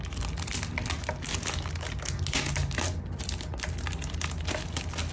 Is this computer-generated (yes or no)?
no